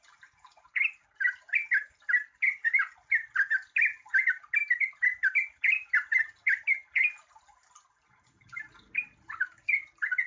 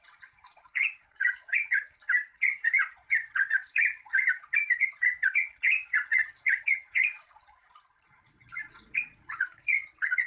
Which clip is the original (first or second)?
first